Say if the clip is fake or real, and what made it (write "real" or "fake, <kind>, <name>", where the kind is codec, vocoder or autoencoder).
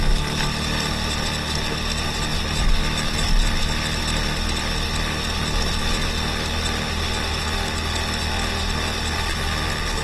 real